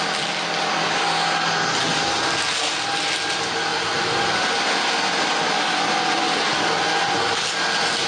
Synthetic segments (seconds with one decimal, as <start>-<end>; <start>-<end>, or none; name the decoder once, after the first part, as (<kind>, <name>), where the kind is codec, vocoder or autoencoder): none